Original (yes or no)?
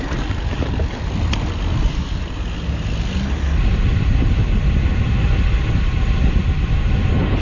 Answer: yes